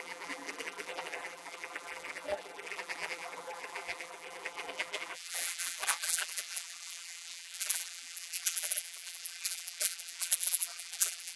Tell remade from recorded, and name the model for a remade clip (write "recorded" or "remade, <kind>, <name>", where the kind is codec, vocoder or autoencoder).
remade, vocoder, BigVGAN v2